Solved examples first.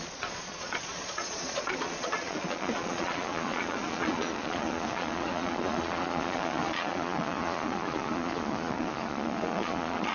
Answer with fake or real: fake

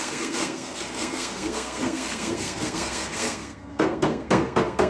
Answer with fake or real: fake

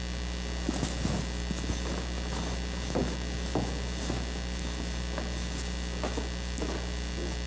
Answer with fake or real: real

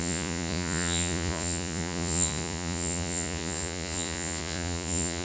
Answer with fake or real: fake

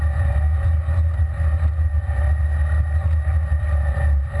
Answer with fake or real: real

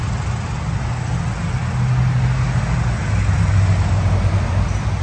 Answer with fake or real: real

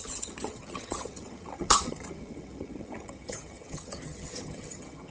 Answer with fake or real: fake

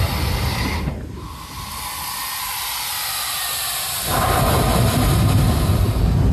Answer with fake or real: real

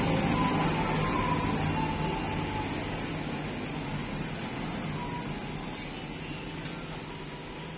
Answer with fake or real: real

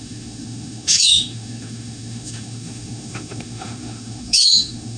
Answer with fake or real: fake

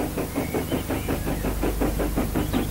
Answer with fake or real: real